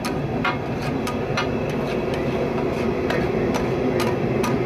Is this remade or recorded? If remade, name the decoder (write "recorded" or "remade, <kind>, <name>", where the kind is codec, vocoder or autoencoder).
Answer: recorded